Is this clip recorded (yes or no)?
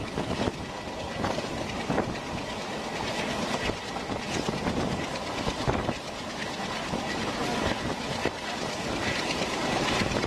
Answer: yes